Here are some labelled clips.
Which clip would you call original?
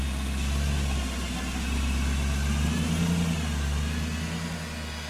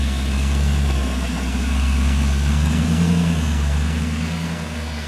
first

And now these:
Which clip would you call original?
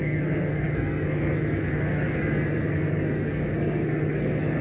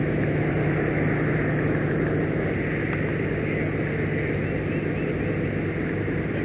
second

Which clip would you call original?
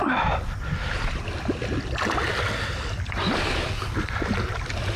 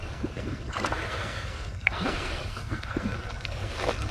first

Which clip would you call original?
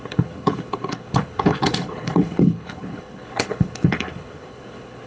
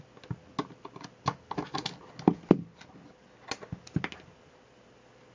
second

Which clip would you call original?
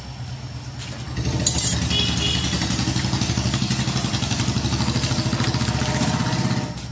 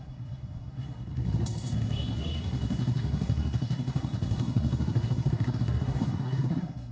first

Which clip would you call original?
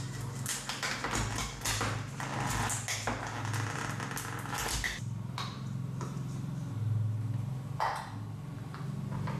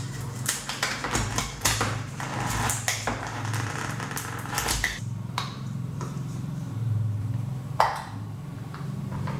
first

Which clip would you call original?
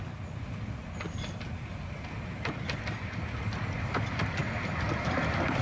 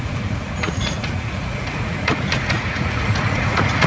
first